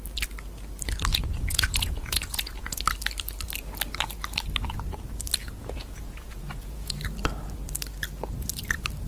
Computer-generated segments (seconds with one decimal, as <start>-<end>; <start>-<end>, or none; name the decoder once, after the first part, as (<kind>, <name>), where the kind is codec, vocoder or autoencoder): 1.1-2.8 (vocoder, Vocos); 5.4-7.0